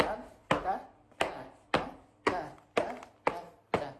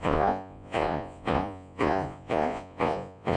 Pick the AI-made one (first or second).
second